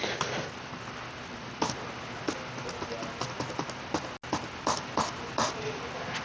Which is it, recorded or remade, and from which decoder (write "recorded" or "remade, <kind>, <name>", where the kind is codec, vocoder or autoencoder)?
recorded